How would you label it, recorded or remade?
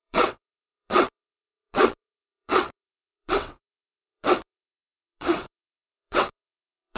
remade